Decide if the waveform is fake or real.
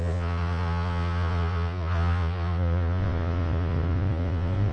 fake